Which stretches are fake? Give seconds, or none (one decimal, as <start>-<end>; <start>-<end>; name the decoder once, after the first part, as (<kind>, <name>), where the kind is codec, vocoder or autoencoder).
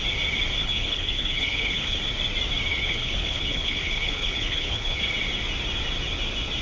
0.6-2.0 (codec, HILCodec); 2.7-5.0